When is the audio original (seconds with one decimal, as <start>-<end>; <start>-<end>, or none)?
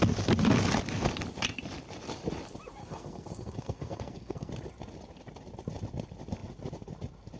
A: 0.0-2.8; 4.5-7.4